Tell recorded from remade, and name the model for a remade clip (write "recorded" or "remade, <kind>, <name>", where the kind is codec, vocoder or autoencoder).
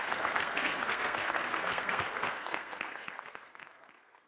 remade, codec, SNAC